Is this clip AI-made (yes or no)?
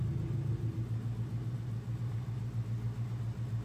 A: no